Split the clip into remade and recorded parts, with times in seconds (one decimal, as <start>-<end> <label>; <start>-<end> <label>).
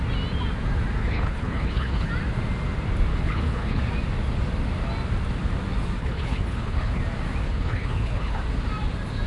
0.0-1.0 recorded; 1.0-2.1 remade; 2.1-3.1 recorded; 3.1-3.8 remade; 3.8-6.0 recorded; 6.0-7.0 remade; 7.0-7.4 recorded; 7.4-8.4 remade; 8.4-9.3 recorded